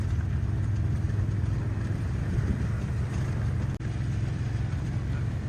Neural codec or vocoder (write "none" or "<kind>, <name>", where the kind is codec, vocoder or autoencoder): none